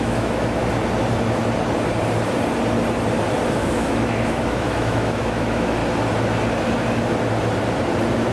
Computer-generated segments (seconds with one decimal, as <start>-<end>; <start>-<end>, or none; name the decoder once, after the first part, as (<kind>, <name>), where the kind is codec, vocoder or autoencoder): 0.0-0.6 (autoencoder, DAC-VAE); 3.5-5.8